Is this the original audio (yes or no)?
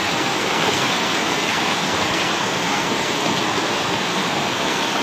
no